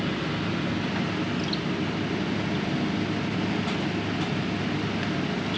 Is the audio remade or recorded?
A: recorded